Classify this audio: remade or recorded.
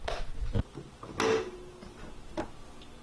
recorded